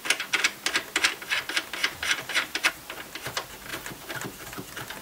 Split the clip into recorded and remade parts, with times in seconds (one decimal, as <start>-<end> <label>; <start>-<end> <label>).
0.0-1.8 recorded; 1.8-2.7 remade; 2.7-5.0 recorded